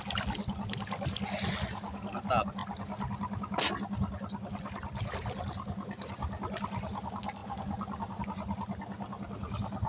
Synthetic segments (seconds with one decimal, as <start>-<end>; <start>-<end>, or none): none